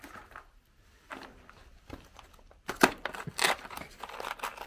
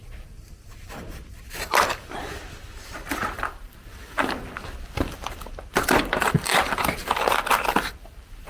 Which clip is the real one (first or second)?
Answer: first